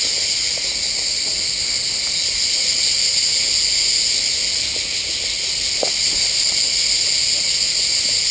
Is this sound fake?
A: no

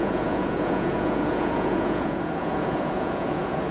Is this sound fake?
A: yes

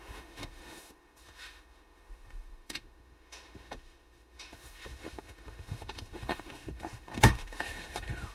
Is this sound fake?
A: yes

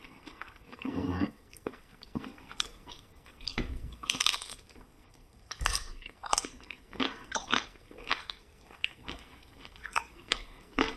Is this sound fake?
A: yes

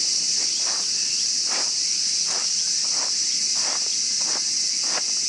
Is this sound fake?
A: no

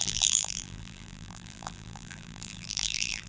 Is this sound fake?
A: yes